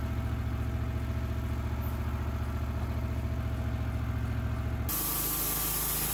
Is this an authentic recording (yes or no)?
yes